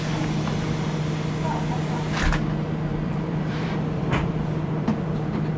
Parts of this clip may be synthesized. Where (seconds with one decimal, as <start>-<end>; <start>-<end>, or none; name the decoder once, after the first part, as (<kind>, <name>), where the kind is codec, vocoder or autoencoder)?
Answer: 2.9-5.6 (vocoder, BigVGAN v2)